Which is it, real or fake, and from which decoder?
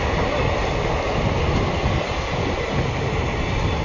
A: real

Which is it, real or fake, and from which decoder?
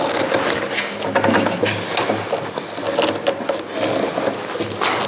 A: real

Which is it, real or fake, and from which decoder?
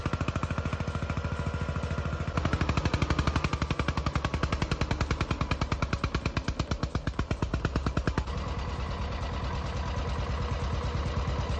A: real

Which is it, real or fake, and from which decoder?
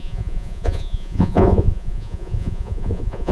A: fake, vocoder, Vocos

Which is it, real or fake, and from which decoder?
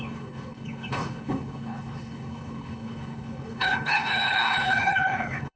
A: fake, codec, HILCodec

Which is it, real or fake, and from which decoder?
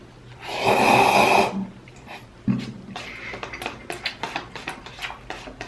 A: real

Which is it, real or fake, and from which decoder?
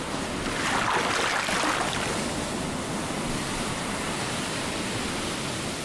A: real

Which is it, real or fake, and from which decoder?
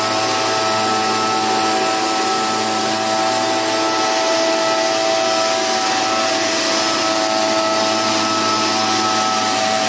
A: real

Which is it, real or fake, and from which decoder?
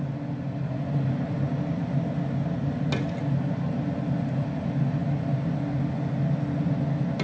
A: real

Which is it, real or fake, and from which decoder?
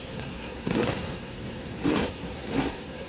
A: fake, codec, SNAC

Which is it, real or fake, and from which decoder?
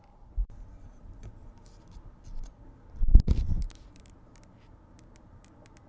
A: real